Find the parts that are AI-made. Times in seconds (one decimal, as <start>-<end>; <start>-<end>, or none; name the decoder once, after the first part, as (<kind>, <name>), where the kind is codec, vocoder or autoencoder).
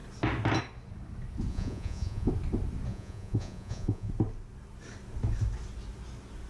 1.5-2.3 (vocoder, Vocos); 2.9-4.1